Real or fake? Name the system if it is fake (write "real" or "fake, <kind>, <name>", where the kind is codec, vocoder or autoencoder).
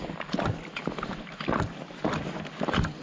real